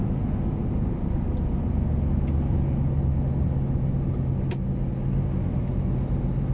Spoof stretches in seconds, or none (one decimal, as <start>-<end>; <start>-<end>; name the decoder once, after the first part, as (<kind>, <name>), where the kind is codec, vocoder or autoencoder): none